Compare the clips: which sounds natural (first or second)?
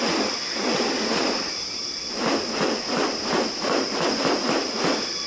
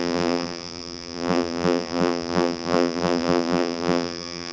first